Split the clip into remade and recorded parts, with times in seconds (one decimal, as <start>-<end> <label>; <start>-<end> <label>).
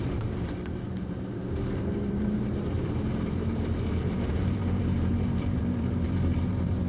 0.0-6.9 remade